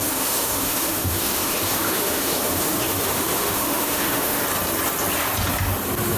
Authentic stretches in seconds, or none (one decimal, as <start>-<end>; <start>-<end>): 4.4-6.2